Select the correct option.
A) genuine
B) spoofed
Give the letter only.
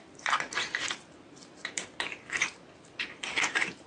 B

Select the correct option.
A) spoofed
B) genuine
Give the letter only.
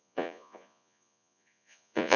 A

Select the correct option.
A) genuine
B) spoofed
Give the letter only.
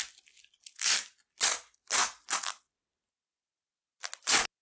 A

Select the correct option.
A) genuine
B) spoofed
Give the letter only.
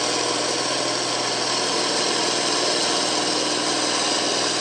A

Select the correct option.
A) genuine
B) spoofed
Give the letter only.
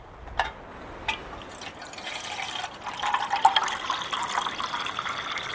A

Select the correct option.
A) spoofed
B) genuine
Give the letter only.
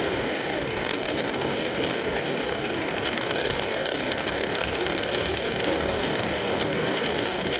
A